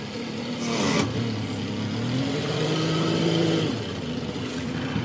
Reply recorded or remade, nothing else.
recorded